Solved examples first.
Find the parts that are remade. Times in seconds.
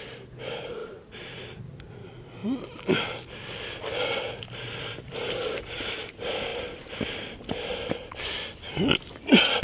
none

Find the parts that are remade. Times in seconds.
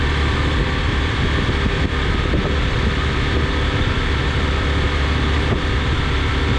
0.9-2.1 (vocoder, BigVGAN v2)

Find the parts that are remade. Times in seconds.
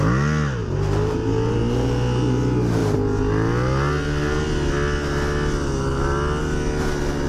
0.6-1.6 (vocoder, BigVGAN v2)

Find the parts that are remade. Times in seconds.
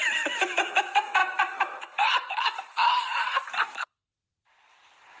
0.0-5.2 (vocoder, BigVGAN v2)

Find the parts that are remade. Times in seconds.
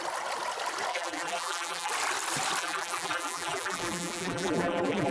0.9-1.9 (vocoder, BigVGAN v2); 2.6-5.1